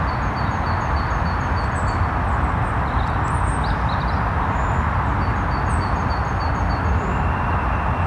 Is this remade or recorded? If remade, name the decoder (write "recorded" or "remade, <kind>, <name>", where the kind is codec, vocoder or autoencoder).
recorded